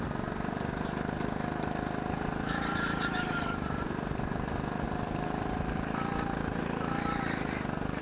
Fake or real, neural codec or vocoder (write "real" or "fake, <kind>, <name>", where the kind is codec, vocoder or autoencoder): real